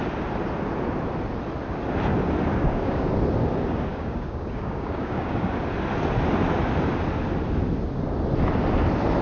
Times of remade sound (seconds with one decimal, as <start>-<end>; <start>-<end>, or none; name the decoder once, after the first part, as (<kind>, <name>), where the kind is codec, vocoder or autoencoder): 2.5-3.1 (codec, DAC); 3.9-5.6